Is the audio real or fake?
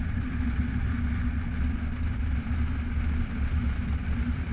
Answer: real